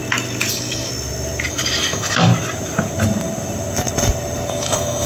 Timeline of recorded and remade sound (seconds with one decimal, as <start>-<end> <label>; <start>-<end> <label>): 0.0-0.5 recorded; 0.5-0.9 remade; 0.9-1.5 recorded; 1.5-2.3 remade; 2.3-4.5 recorded; 4.5-5.1 remade